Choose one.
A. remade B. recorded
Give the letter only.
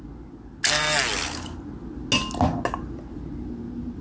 B